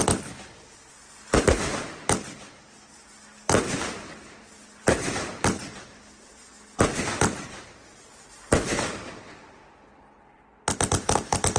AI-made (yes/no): no